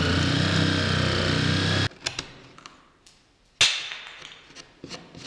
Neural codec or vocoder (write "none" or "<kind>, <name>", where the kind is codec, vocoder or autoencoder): none